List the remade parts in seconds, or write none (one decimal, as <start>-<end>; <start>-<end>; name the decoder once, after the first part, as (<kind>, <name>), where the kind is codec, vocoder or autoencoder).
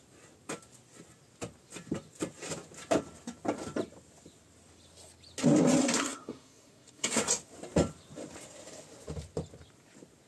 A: 5.8-7.2 (codec, SNAC)